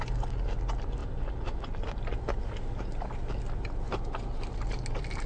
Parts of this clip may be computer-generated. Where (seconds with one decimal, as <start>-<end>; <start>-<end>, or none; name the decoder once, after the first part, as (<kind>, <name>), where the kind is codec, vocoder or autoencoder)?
none